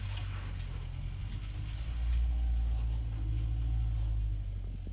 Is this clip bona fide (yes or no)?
yes